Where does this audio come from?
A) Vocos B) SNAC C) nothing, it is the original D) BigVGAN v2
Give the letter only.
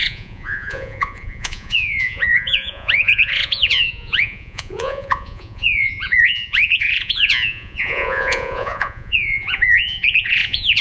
A